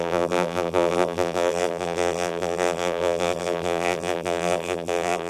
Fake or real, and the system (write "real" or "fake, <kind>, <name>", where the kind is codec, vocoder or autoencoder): fake, vocoder, BigVGAN v2